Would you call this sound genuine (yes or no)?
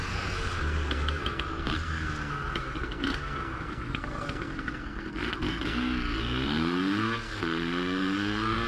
no